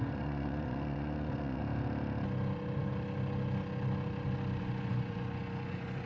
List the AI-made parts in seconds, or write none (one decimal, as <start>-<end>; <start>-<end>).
0.0-1.6; 4.6-6.1